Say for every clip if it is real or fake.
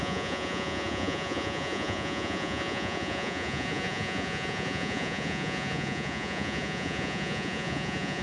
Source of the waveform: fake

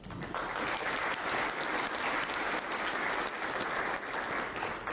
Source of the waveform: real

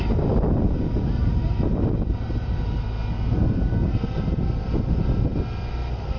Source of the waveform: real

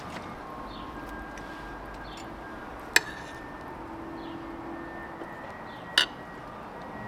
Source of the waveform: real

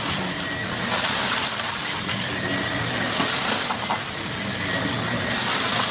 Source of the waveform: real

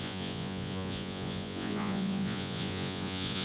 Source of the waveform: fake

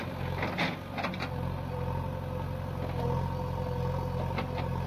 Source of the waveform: real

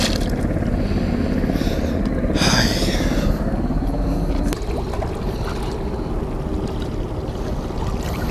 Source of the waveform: real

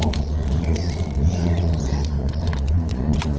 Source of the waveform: fake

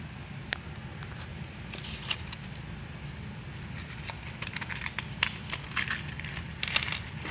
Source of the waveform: real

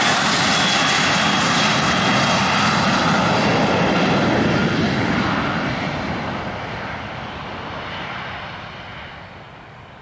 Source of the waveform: real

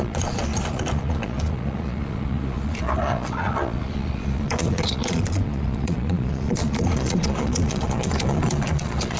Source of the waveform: fake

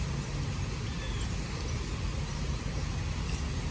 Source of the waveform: real